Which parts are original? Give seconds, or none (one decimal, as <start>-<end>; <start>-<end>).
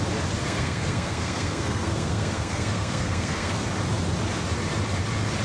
0.0-0.4; 3.6-5.4